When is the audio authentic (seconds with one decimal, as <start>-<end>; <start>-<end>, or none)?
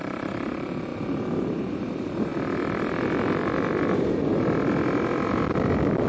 2.3-6.1